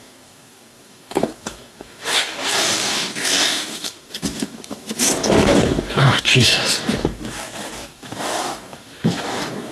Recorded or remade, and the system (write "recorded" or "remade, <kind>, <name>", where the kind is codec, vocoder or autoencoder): remade, codec, DAC